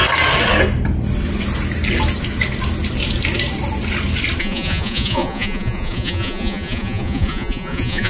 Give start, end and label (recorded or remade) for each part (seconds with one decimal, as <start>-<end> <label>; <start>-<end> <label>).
0.0-4.4 recorded; 4.4-8.1 remade